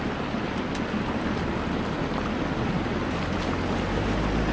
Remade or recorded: recorded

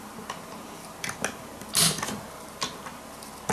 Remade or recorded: recorded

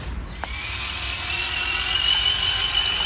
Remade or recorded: recorded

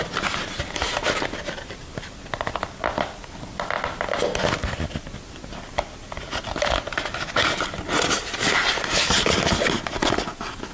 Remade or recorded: recorded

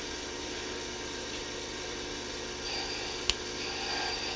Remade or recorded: recorded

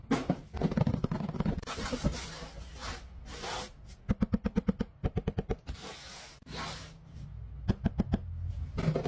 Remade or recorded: recorded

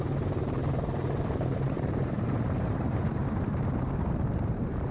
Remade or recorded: remade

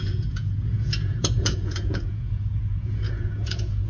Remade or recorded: remade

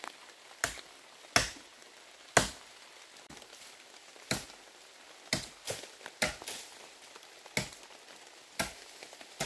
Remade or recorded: recorded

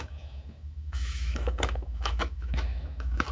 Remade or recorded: remade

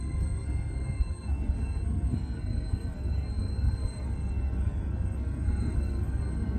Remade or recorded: remade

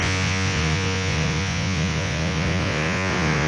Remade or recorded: remade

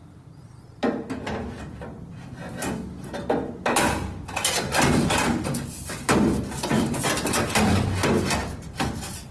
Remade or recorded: recorded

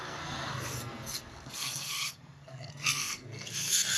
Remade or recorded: remade